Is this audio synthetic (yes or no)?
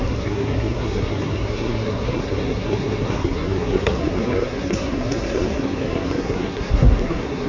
yes